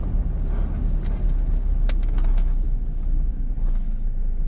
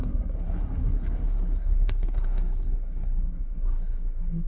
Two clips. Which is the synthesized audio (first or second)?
second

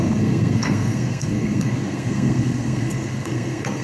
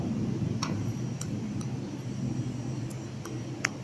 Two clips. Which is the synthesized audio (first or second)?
first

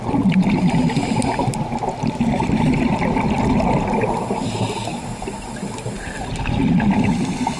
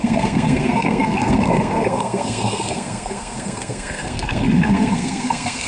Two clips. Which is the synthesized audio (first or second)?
second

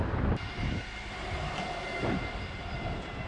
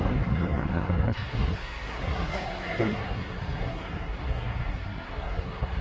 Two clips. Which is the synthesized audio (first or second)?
second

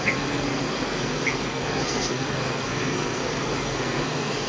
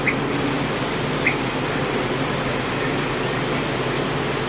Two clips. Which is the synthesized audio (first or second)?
first